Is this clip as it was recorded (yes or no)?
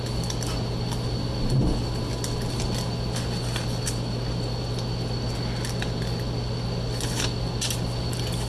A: yes